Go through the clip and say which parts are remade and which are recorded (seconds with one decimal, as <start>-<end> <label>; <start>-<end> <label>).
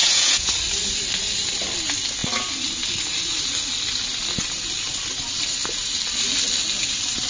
0.0-0.5 remade; 0.5-7.3 recorded